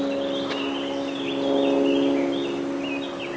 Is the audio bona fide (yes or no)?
yes